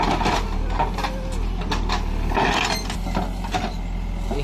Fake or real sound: real